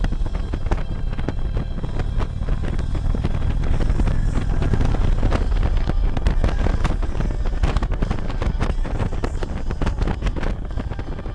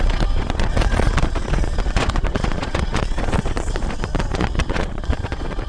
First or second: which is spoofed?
second